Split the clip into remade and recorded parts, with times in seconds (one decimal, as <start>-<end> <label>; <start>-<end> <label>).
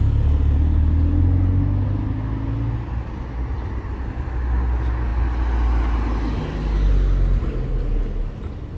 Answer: 0.0-8.8 recorded